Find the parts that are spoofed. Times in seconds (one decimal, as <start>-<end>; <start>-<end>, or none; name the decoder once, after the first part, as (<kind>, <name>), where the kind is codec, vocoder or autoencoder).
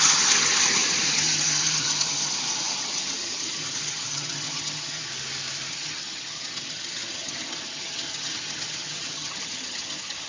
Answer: 0.0-5.1 (vocoder, HiFi-GAN); 5.7-10.3